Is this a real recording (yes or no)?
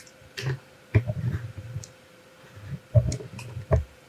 no